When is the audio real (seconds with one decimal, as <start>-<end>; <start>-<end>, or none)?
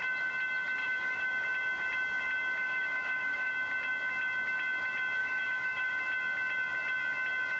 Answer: 0.0-0.8; 1.3-2.6; 3.5-5.2; 5.9-7.6